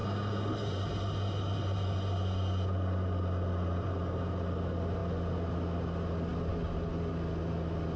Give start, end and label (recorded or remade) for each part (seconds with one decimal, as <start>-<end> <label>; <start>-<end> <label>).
0.0-8.0 recorded